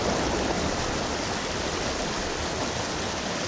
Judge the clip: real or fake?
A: real